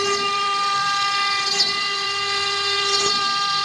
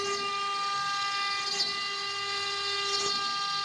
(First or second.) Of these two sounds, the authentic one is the second